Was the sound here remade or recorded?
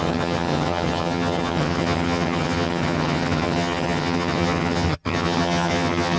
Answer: remade